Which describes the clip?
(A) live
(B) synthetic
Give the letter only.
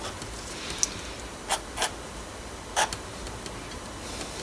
A